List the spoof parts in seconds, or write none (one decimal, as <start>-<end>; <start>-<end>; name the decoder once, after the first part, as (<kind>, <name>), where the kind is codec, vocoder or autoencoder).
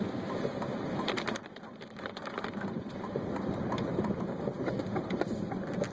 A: 0.7-4.2 (vocoder, BigVGAN v2)